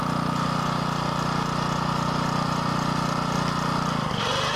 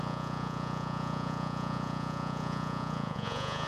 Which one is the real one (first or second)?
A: first